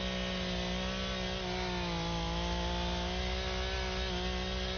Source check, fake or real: real